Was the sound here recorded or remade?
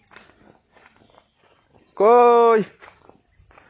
recorded